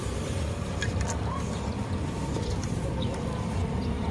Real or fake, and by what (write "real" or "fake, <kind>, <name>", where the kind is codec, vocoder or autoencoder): real